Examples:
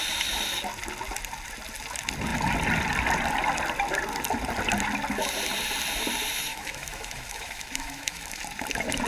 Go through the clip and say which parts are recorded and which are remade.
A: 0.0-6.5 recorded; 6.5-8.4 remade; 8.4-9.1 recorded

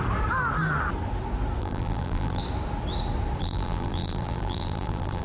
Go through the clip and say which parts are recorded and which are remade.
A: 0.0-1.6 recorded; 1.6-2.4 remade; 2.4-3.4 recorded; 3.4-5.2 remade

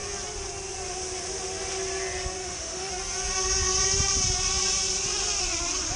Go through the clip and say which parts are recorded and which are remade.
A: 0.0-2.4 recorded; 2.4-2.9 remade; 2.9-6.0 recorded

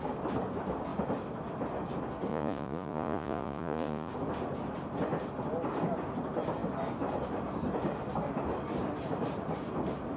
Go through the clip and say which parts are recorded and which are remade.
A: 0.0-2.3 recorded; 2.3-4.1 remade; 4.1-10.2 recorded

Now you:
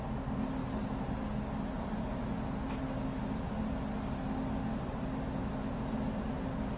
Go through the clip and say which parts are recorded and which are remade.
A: 0.0-6.8 recorded